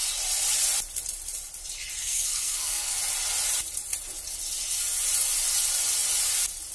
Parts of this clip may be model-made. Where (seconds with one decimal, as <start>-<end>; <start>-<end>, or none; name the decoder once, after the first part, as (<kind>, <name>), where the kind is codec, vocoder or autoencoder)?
2.0-3.0 (codec, SNAC)